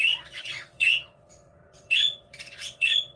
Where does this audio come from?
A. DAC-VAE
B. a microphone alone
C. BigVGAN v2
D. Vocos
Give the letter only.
D